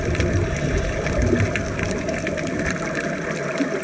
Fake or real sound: real